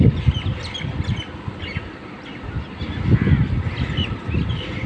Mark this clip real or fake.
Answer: real